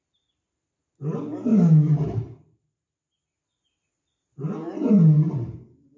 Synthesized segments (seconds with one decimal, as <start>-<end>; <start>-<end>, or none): none